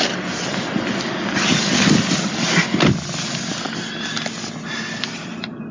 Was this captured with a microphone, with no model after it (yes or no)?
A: yes